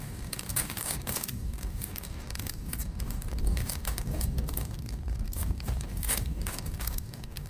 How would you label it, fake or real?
fake